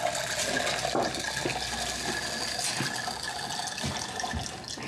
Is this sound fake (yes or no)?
no